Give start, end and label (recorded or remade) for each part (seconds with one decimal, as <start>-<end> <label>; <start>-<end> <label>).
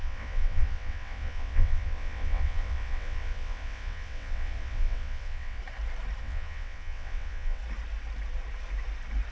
0.0-5.6 remade; 5.6-6.2 recorded; 6.2-7.6 remade; 7.6-9.3 recorded